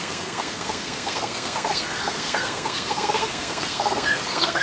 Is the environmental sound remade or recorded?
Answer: remade